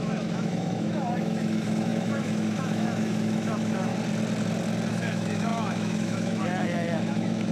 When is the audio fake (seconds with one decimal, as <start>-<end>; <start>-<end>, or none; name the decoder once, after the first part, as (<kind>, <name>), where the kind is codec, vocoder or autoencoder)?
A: 0.0-3.9 (autoencoder, DAC-VAE); 4.9-7.5